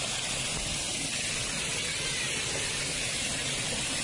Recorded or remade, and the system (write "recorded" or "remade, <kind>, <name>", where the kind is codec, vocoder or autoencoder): recorded